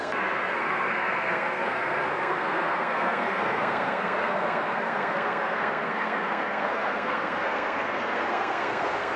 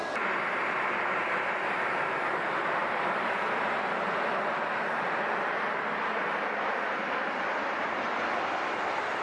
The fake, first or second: first